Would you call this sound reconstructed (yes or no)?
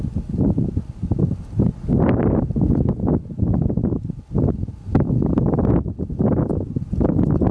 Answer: no